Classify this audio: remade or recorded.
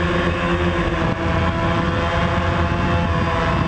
recorded